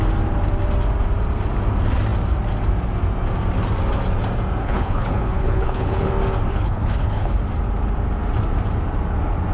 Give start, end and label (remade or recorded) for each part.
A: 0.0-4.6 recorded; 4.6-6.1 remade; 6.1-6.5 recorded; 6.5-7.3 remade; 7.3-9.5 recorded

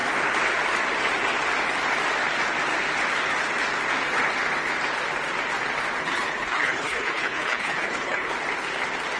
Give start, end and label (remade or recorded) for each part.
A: 0.0-6.0 recorded; 6.0-8.3 remade; 8.3-9.2 recorded

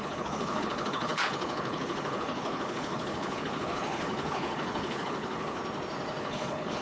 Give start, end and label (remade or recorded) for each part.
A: 0.0-5.6 remade; 5.6-6.2 recorded; 6.2-6.8 remade

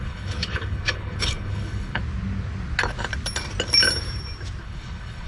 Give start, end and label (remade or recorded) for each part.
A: 0.0-2.0 remade; 2.0-4.6 recorded; 4.6-5.3 remade

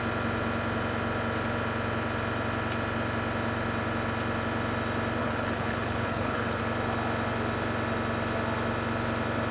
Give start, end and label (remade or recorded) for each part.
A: 0.0-5.2 recorded; 5.2-6.6 remade; 6.6-9.5 recorded